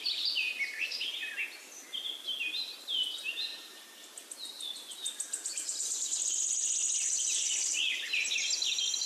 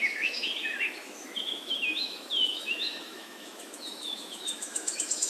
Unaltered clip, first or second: first